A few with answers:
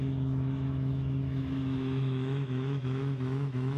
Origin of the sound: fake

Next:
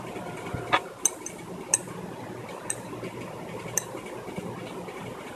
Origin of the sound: real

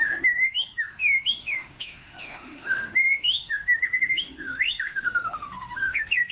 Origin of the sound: fake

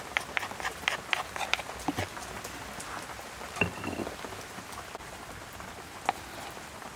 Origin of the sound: real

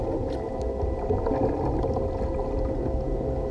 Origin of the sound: real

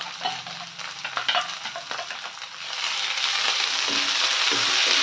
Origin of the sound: real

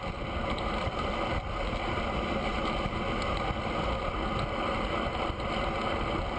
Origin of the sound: real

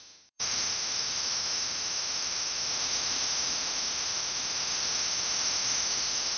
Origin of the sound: fake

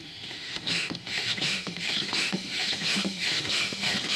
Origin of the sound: fake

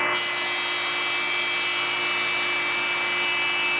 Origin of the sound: real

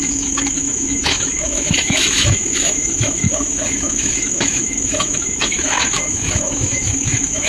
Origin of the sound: fake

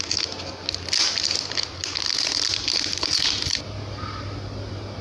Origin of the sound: real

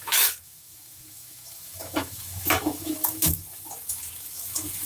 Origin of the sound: fake